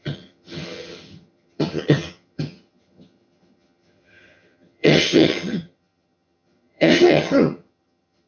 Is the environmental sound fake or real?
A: fake